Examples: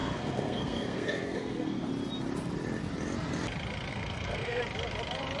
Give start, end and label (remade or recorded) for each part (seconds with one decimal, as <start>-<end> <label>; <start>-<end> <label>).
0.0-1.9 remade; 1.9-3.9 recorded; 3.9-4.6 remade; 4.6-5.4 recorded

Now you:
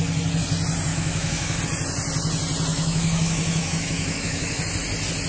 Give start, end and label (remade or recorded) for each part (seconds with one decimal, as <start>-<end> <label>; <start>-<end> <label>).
0.0-0.9 recorded; 0.9-1.6 remade; 1.6-2.7 recorded; 2.7-4.6 remade; 4.6-5.3 recorded

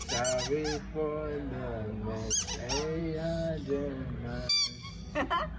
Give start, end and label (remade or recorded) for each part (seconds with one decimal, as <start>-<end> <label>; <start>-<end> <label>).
0.0-5.6 recorded

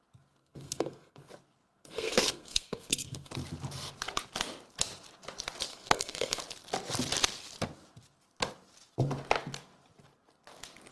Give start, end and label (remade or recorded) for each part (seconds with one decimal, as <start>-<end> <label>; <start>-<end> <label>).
0.0-0.4 recorded; 0.4-1.3 remade; 1.3-1.8 recorded; 1.8-3.3 remade; 3.3-5.7 recorded; 5.7-6.4 remade; 6.4-10.9 recorded

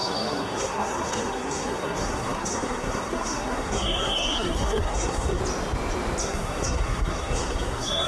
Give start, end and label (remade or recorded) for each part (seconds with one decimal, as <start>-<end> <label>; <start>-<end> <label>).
0.0-5.4 remade; 5.4-6.2 recorded; 6.2-8.1 remade

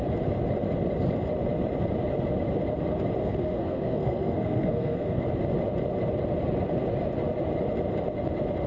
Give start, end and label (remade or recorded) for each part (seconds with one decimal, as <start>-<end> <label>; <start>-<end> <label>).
0.0-3.2 recorded; 3.2-5.2 remade; 5.2-8.7 recorded

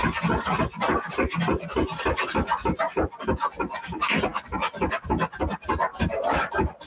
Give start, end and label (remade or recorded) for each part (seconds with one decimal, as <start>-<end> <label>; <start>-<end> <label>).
0.0-5.9 recorded; 5.9-6.5 remade; 6.5-6.9 recorded